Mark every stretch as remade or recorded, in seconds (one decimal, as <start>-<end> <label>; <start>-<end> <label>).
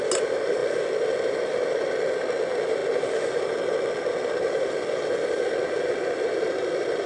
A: 0.0-7.1 recorded